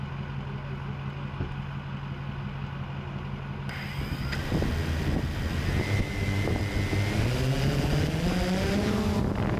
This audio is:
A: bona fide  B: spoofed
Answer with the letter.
A